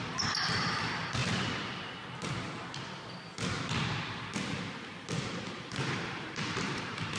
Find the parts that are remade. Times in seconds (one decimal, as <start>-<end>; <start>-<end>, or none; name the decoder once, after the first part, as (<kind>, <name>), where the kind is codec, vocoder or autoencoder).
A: 0.0-1.2 (vocoder, BigVGAN v2); 5.5-7.2